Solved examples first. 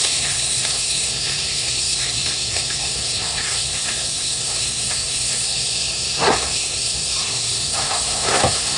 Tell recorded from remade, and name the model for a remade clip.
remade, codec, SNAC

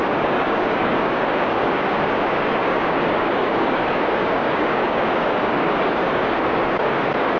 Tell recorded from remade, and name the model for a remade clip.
remade, codec, DAC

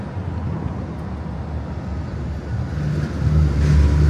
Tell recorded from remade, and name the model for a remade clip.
recorded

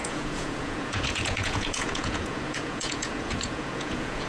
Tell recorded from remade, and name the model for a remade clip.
remade, vocoder, Vocos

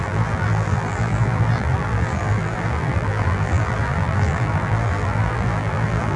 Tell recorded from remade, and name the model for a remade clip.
remade, vocoder, BigVGAN v2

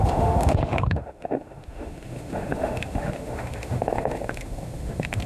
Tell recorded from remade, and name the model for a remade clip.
remade, autoencoder, DAC-VAE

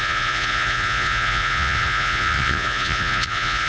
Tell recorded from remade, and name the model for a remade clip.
remade, vocoder, Vocos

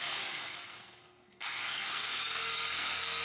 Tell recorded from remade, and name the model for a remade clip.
remade, codec, SNAC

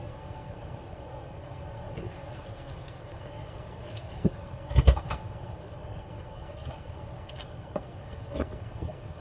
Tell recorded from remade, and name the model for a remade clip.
remade, codec, SNAC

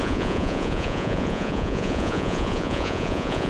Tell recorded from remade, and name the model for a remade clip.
remade, vocoder, Vocos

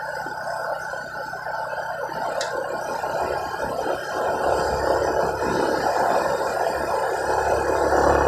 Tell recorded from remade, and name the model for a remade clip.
recorded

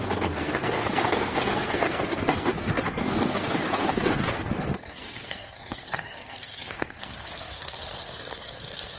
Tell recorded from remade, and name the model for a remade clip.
remade, codec, SNAC